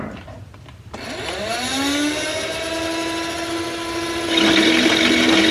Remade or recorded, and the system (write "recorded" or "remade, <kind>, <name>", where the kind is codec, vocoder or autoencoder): recorded